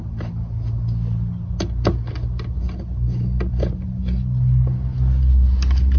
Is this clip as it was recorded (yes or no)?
yes